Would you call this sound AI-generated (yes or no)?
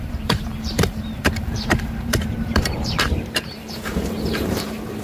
yes